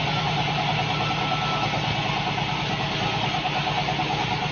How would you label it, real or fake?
real